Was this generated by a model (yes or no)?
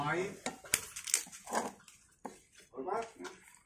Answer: no